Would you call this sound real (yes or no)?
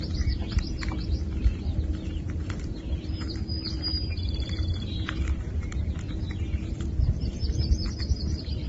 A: no